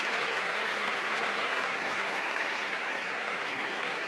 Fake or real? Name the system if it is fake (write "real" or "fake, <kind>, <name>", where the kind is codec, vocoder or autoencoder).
fake, codec, SNAC